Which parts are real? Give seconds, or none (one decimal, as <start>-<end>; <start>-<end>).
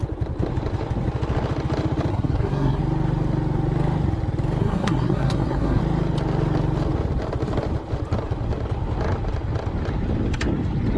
0.0-2.1; 2.8-4.6; 5.8-11.0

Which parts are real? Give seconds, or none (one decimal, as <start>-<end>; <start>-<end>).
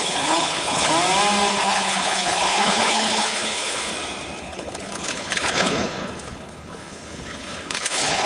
0.9-1.5; 3.9-4.4